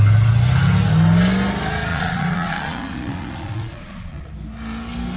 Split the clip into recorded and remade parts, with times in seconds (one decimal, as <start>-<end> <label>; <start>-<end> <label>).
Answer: 0.0-1.9 recorded; 1.9-4.3 remade; 4.3-5.2 recorded